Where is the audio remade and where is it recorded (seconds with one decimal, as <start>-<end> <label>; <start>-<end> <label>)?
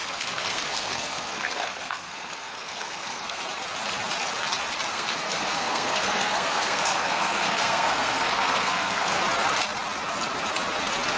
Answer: 0.0-3.4 remade; 3.4-4.9 recorded; 4.9-9.2 remade; 9.2-11.2 recorded